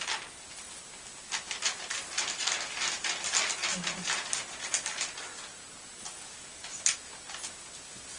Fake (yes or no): no